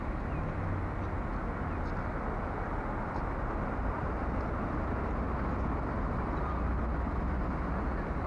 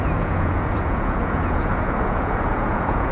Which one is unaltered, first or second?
first